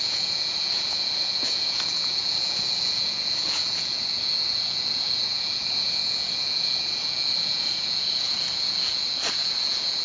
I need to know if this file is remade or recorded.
remade